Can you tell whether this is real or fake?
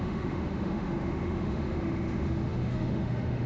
fake